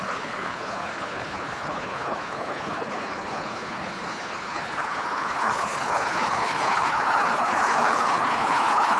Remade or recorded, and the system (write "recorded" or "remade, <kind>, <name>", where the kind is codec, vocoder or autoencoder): remade, codec, HILCodec